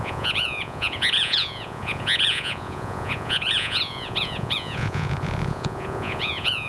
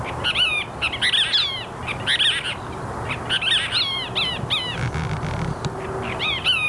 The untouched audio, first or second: second